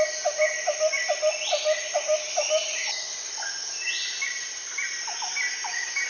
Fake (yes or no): no